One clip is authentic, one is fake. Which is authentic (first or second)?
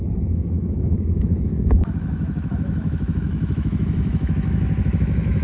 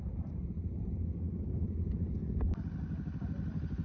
second